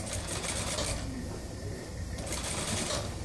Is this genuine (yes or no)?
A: yes